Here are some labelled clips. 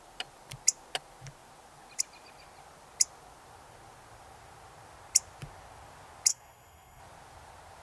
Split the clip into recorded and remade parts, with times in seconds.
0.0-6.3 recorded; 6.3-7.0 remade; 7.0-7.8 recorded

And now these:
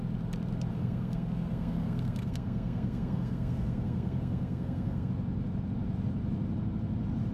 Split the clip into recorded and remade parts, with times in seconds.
0.0-0.7 recorded; 0.7-5.1 remade; 5.1-7.3 recorded